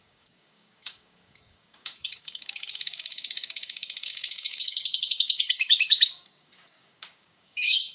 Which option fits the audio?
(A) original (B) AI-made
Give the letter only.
B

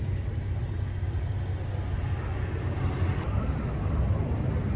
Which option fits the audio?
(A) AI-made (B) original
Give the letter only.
B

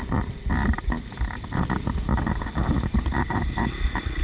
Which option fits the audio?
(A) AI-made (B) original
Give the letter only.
B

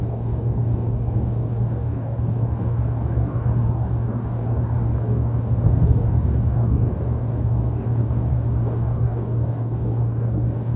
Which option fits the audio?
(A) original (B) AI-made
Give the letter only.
B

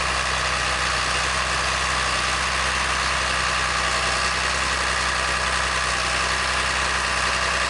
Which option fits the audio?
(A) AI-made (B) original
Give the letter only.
B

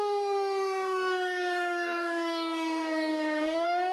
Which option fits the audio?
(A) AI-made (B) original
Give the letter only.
A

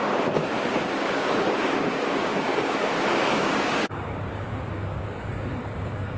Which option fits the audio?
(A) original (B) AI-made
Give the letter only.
B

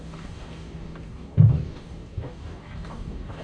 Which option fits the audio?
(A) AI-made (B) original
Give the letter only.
A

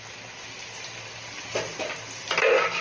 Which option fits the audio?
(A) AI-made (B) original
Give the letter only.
B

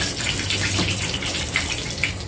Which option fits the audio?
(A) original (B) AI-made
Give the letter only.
A